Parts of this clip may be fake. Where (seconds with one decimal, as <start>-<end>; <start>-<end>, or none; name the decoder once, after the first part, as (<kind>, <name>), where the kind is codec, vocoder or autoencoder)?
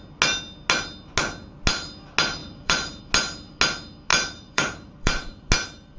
2.4-3.0 (vocoder, BigVGAN v2); 4.1-5.5